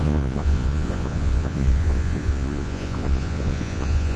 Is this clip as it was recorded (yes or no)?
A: no